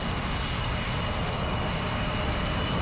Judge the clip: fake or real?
real